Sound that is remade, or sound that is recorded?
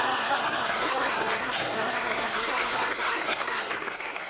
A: remade